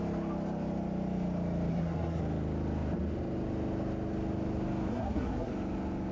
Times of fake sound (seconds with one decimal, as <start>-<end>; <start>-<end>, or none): 1.7-2.2; 4.9-5.5